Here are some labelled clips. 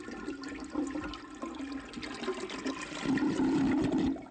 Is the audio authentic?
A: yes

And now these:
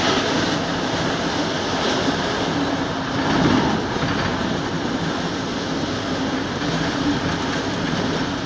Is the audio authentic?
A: yes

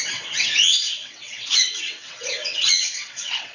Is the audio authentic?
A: no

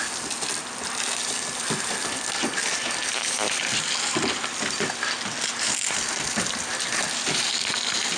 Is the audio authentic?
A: yes